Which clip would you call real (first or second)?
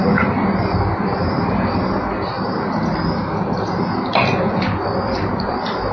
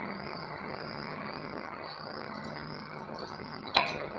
first